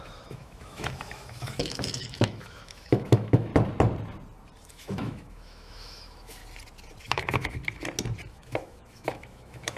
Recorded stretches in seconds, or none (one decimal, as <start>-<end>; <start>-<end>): 3.5-4.7; 6.4-7.0; 7.6-8.3